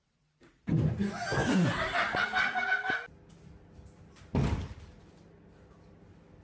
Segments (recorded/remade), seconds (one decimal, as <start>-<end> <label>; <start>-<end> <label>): 0.0-6.4 recorded